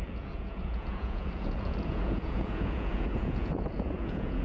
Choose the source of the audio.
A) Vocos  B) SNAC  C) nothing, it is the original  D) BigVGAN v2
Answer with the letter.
A